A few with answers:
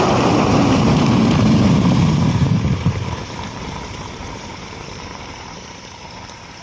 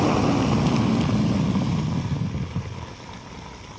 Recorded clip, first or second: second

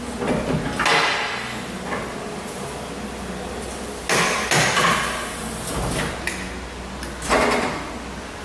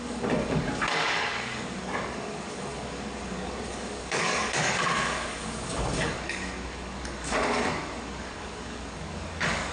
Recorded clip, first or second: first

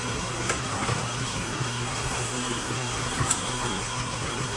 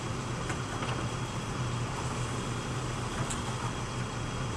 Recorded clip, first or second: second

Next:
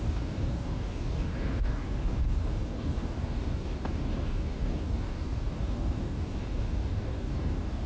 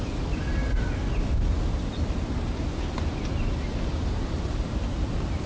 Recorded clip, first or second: second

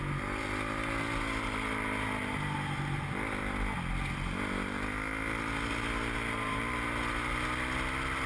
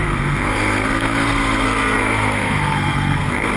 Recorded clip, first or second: first